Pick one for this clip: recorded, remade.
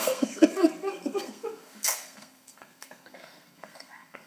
remade